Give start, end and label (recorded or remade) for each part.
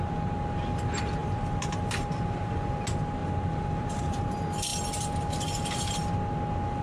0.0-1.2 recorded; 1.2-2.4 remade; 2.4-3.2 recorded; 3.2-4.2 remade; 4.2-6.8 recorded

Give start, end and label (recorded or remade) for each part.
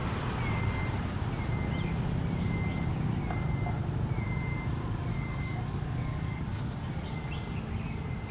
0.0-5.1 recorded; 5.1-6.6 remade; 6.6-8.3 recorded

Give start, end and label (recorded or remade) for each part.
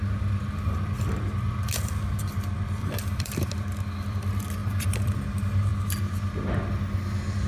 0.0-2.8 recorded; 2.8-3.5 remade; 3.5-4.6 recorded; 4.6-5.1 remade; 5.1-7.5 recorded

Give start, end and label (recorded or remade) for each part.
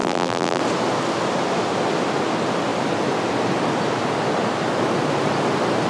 0.0-0.6 remade; 0.6-5.9 recorded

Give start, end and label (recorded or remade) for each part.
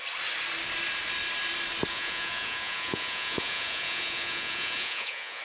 0.0-1.9 recorded; 1.9-5.4 remade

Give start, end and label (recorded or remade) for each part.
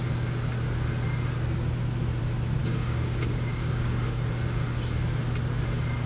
0.0-2.6 recorded; 2.6-4.3 remade; 4.3-6.1 recorded